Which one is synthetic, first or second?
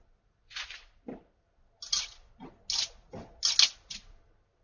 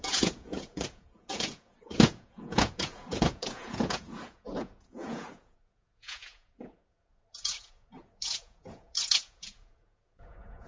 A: second